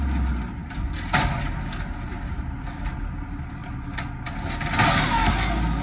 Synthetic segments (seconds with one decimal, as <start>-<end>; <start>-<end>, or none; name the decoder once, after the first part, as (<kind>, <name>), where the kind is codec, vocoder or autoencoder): none